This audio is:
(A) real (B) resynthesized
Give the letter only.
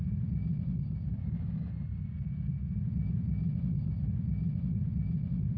A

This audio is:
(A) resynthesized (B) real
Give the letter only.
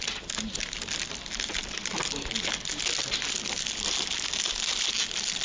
B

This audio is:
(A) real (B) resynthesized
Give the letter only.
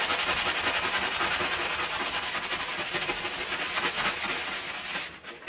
A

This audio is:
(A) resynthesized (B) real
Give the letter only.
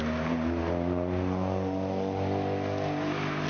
B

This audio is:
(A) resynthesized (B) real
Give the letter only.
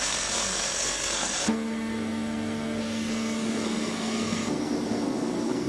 A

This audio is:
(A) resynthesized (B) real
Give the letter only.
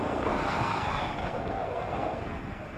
A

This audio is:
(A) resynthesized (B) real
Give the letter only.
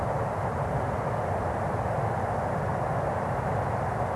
B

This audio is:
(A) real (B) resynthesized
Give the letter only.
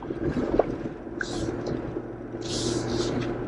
A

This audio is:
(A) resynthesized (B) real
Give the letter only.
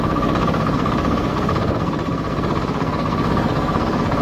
A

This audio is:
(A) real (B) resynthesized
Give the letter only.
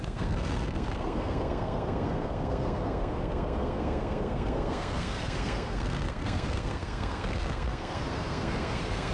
B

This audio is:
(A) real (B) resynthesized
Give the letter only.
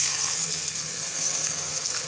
B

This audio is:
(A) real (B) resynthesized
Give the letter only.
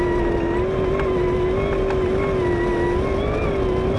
A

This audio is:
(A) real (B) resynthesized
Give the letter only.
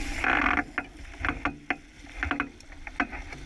A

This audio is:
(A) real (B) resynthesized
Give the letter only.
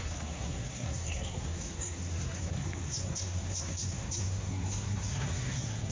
B